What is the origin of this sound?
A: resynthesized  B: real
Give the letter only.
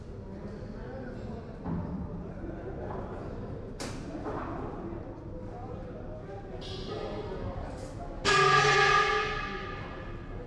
B